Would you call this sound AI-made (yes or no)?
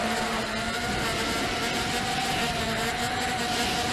no